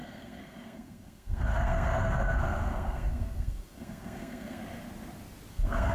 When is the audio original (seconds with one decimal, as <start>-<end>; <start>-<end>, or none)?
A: 4.6-5.5